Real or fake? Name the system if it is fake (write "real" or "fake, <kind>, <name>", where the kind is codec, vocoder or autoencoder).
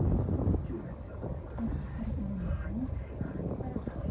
real